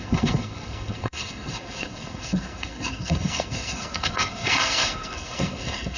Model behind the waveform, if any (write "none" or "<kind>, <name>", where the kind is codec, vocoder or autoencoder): codec, SNAC